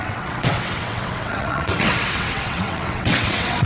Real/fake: fake